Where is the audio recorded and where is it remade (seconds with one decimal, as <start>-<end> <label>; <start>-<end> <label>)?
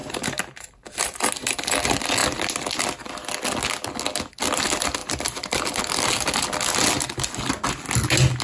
0.0-1.2 remade; 1.2-5.0 recorded; 5.0-5.8 remade; 5.8-8.4 recorded